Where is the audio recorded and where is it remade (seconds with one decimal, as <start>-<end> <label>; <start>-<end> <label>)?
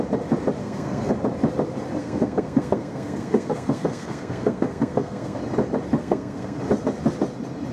0.0-0.6 recorded; 0.6-1.1 remade; 1.1-2.0 recorded; 2.0-5.4 remade; 5.4-6.0 recorded; 6.0-6.6 remade; 6.6-7.7 recorded